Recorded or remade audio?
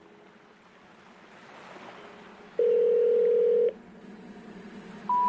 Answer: recorded